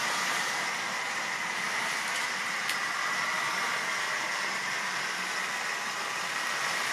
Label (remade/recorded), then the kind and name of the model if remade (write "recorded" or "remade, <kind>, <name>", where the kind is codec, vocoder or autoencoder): recorded